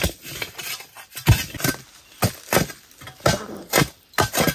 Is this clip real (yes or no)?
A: yes